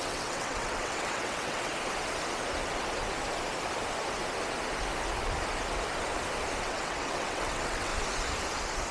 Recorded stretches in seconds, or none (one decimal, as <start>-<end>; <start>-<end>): 1.7-6.6; 7.9-8.9

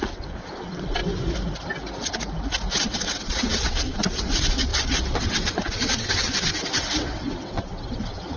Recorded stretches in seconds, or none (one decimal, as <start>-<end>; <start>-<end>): 1.0-2.8